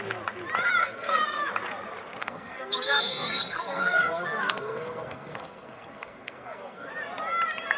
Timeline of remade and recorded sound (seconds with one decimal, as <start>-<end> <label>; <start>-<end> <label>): 0.0-0.8 recorded; 0.8-1.5 remade; 1.5-2.2 recorded; 2.2-6.9 remade; 6.9-7.8 recorded